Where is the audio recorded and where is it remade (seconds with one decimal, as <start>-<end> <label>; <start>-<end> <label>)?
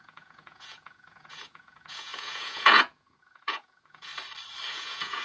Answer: 0.0-4.1 remade; 4.1-4.7 recorded; 4.7-5.2 remade